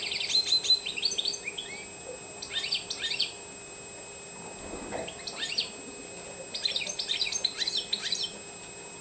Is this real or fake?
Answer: real